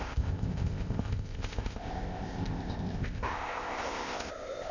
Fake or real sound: fake